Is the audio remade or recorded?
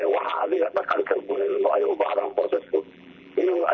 remade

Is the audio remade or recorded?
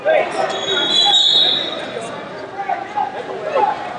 recorded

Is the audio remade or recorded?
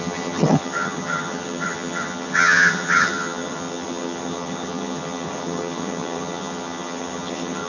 remade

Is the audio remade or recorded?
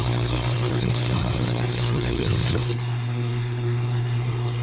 remade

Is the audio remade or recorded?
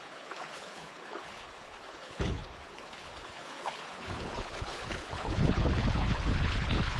remade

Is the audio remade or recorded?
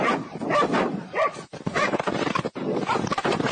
remade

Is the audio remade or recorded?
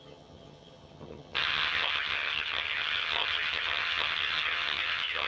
remade